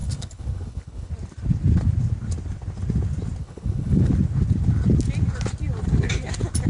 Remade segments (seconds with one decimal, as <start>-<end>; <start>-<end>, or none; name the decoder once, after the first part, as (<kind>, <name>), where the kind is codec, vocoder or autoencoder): 0.0-1.1 (codec, HILCodec); 3.4-4.1